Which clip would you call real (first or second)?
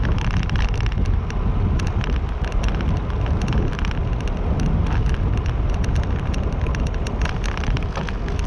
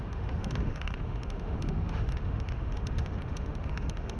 first